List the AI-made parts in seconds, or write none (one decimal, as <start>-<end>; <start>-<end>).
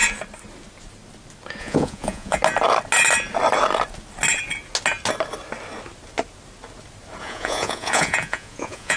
1.6-2.4; 7.2-9.0